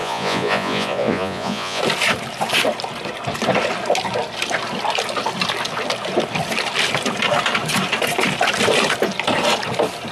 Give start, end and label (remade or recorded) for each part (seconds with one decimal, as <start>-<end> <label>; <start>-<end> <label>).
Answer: 0.0-1.8 remade; 1.8-10.1 recorded